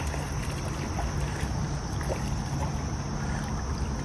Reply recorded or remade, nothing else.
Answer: recorded